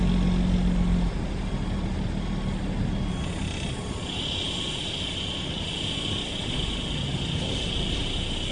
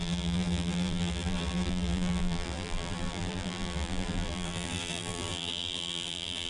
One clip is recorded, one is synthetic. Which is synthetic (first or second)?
second